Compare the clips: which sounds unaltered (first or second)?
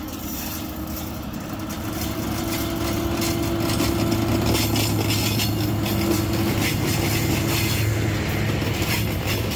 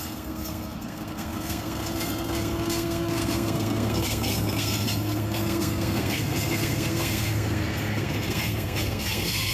first